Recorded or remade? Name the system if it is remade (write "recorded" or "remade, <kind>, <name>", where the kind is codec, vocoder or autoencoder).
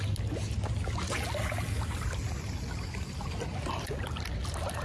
recorded